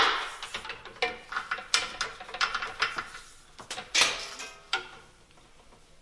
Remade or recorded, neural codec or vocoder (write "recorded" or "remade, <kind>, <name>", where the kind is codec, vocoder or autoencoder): recorded